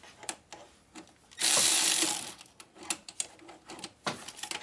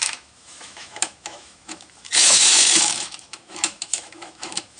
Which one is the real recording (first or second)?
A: first